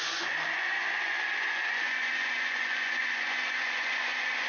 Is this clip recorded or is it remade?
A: remade